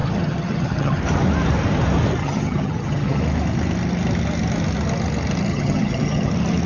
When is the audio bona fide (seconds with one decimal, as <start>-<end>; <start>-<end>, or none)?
1.0-2.2; 3.2-5.5; 6.3-6.7